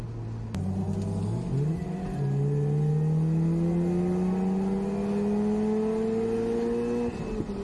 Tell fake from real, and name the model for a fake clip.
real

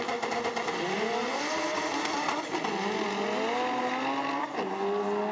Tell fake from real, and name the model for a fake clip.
real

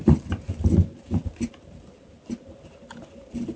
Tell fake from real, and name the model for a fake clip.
real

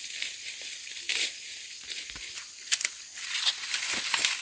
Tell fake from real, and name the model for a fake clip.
real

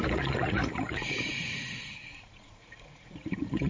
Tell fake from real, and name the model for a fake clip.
fake, vocoder, Vocos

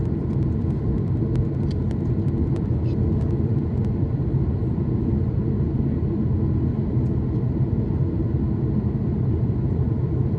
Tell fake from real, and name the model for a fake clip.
real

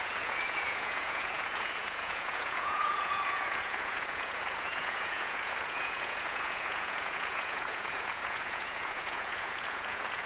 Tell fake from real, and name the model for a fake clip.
fake, vocoder, Vocos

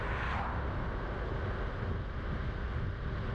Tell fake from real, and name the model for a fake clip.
real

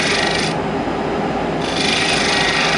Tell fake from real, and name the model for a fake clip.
real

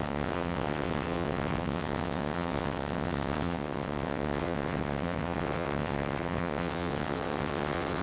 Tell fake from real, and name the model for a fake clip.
fake, vocoder, WaveNeXt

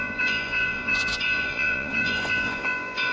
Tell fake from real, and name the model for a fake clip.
fake, vocoder, Vocos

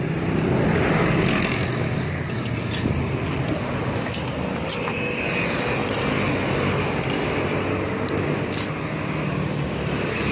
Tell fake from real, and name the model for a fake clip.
real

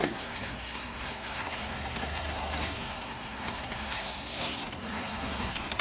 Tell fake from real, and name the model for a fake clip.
fake, codec, SNAC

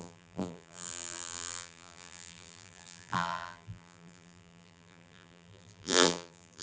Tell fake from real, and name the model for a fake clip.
fake, vocoder, BigVGAN v2